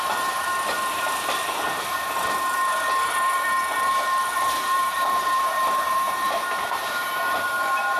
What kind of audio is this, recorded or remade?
remade